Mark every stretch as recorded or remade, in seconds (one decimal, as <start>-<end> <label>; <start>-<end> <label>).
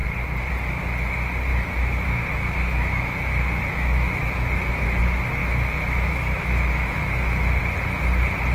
0.0-1.5 recorded; 1.5-5.0 remade; 5.0-5.4 recorded; 5.4-7.6 remade; 7.6-8.5 recorded